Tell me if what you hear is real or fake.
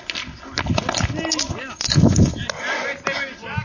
real